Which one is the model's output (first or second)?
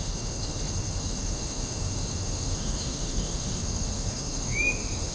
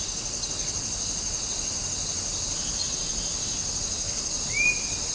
first